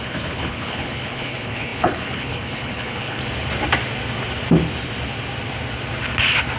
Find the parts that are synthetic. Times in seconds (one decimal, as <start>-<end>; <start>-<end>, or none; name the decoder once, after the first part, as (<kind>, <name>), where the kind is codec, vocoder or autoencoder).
0.0-3.2 (codec, HILCodec)